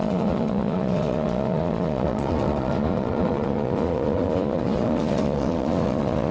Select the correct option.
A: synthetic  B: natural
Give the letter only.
A